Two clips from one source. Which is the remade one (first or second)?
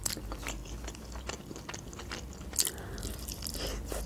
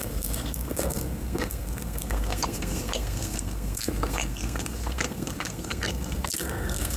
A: second